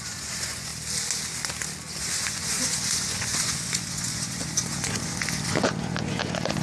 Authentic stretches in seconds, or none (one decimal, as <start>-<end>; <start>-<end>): 0.7-2.0